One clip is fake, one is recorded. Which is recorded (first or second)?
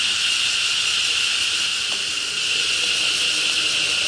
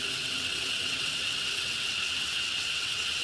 first